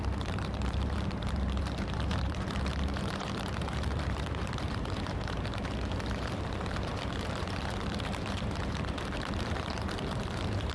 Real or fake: fake